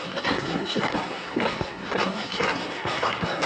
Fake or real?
fake